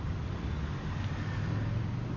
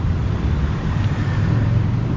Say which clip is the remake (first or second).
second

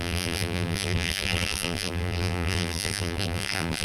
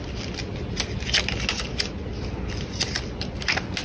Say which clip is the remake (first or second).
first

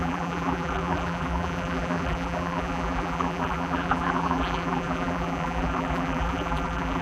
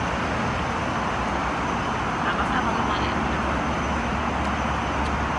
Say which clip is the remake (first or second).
first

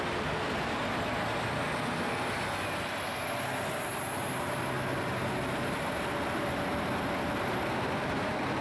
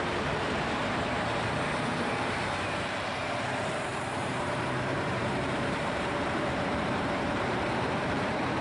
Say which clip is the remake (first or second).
second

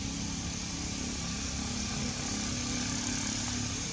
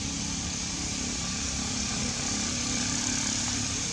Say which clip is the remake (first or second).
second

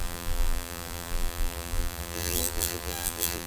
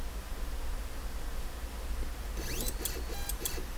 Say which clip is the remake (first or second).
first